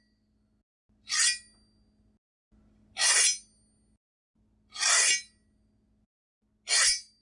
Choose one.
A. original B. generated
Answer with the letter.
A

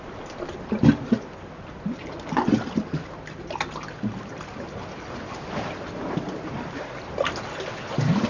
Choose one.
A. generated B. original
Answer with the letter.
B